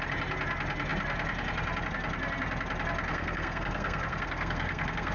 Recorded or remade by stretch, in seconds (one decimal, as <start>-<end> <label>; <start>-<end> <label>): 0.0-3.1 recorded; 3.1-5.1 remade